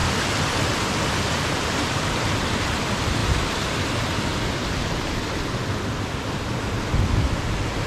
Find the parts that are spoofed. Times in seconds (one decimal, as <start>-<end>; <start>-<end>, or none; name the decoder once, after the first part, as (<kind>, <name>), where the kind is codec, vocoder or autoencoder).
none